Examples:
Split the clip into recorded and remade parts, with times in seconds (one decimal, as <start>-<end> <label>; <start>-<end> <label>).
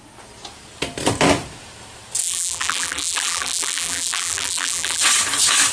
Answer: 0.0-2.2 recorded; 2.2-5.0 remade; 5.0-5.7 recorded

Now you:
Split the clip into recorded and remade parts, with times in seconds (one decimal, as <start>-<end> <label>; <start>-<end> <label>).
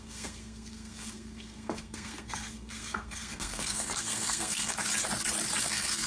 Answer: 0.0-4.8 remade; 4.8-5.6 recorded; 5.6-6.1 remade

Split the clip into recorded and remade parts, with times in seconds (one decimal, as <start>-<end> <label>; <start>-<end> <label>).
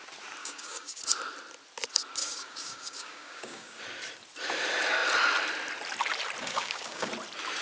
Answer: 0.0-0.4 recorded; 0.4-1.0 remade; 1.0-2.2 recorded; 2.2-3.8 remade; 3.8-6.4 recorded; 6.4-7.1 remade; 7.1-7.6 recorded